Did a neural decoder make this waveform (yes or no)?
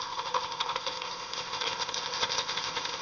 yes